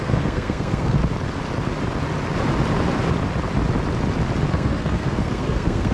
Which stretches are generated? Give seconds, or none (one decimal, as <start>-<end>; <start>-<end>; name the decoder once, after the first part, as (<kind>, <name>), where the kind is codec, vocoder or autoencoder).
0.0-1.0 (codec, SNAC); 4.5-5.9